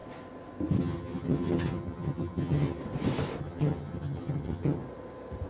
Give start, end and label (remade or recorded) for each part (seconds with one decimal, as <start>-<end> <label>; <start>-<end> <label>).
0.0-0.8 recorded; 0.8-2.8 remade; 2.8-3.4 recorded; 3.4-4.8 remade; 4.8-5.5 recorded